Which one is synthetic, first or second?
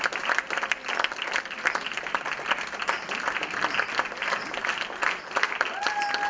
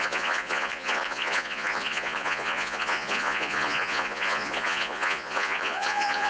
second